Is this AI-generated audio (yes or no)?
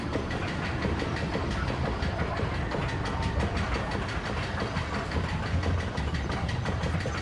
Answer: no